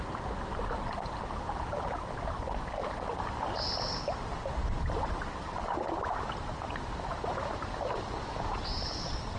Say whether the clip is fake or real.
real